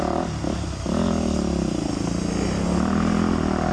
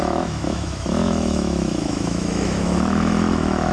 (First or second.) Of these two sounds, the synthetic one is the second